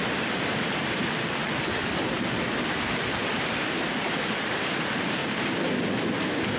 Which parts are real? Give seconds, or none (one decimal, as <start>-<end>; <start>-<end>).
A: 1.0-4.4; 5.2-6.6